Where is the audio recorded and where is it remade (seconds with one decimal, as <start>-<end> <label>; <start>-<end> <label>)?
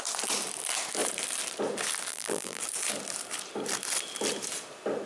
0.0-2.1 recorded; 2.1-2.6 remade; 2.6-5.1 recorded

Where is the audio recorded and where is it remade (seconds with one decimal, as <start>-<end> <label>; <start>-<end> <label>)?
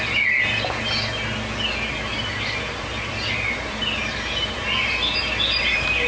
0.0-2.1 recorded; 2.1-6.1 remade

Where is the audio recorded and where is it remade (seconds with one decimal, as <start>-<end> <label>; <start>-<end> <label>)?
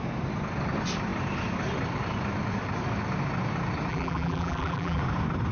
0.0-3.9 recorded; 3.9-5.0 remade; 5.0-5.5 recorded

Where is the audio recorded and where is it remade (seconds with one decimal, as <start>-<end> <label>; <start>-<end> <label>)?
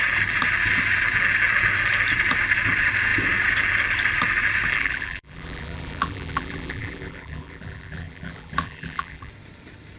0.0-4.7 recorded; 4.7-9.3 remade; 9.3-10.0 recorded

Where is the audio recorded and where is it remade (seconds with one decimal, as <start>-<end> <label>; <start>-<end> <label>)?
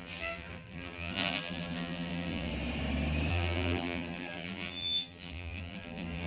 0.0-2.5 remade; 2.5-3.3 recorded; 3.3-6.3 remade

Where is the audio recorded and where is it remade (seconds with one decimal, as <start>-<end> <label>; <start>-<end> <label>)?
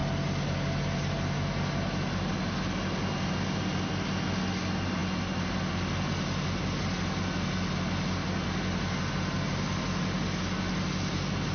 0.0-11.5 recorded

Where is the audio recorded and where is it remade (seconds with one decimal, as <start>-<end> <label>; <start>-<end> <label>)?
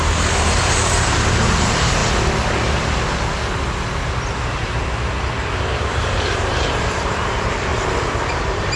0.0-2.0 remade; 2.0-5.6 recorded; 5.6-7.7 remade; 7.7-8.3 recorded; 8.3-8.8 remade